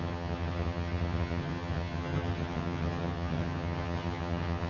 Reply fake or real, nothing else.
fake